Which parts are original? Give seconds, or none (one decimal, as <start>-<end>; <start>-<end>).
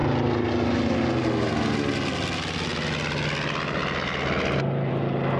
0.0-5.4